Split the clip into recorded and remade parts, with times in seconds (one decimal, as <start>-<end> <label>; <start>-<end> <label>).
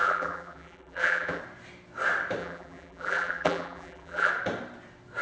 0.0-1.4 remade; 1.4-2.4 recorded; 2.4-4.3 remade; 4.3-5.2 recorded